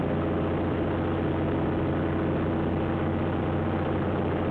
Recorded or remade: recorded